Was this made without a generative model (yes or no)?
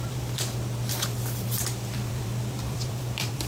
no